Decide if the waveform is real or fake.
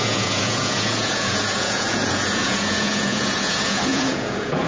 fake